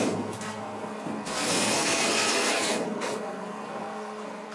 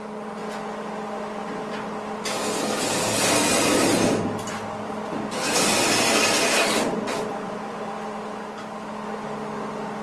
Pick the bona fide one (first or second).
second